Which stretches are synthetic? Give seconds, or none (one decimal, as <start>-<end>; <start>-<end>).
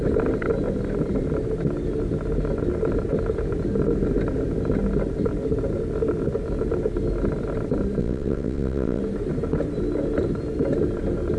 8.0-9.0